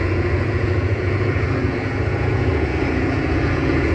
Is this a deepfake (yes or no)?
yes